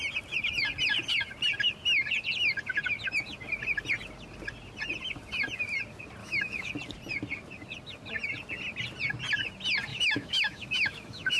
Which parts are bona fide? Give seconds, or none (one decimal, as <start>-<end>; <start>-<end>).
0.0-6.2; 6.7-9.9